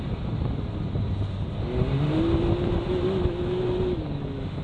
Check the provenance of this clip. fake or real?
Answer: real